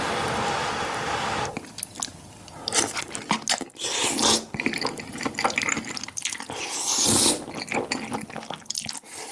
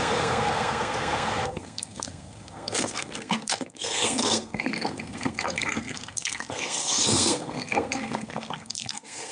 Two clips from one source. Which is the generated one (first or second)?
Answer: second